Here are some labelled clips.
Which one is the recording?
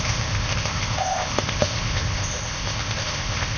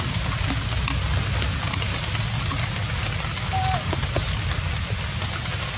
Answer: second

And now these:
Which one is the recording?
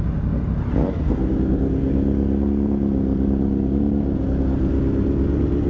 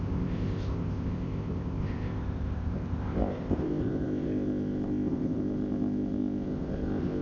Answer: first